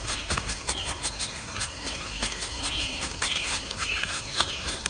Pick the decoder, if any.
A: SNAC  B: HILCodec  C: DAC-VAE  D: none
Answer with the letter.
A